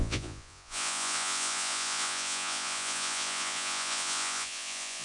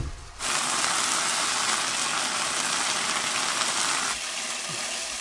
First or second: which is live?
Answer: second